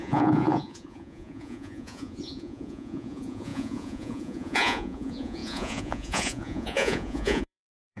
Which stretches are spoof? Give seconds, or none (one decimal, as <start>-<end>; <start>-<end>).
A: 0.0-8.0